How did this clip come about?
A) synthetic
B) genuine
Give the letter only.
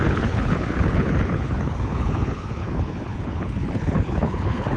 A